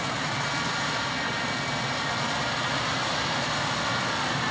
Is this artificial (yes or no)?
no